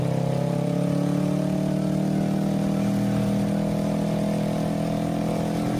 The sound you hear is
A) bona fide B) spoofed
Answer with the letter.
A